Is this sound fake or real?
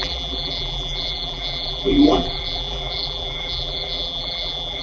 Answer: fake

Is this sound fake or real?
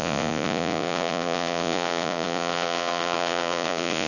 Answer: fake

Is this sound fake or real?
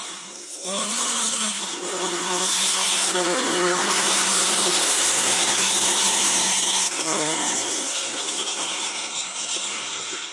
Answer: fake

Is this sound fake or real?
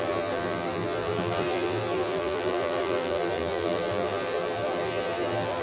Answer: fake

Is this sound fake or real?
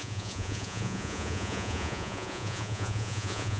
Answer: fake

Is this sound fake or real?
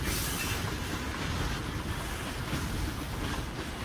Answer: real